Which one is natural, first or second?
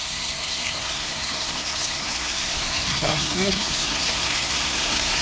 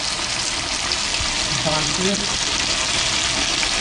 second